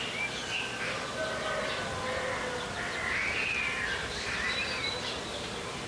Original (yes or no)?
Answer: yes